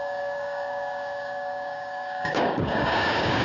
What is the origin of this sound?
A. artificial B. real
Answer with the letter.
A